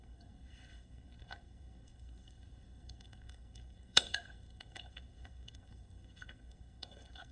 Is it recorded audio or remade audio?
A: remade